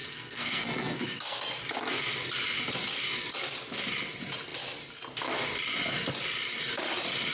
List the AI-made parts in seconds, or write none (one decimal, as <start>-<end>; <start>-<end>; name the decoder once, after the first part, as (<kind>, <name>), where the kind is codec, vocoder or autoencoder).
0.0-1.4 (codec, SNAC)